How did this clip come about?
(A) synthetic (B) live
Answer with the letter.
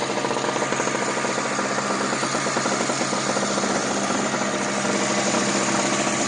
B